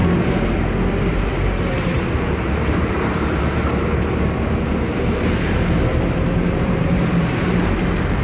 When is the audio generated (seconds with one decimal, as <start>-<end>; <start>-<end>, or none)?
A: 1.0-8.2